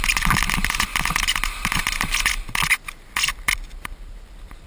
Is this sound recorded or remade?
remade